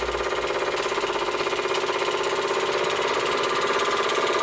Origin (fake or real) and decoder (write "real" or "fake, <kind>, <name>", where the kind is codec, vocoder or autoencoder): real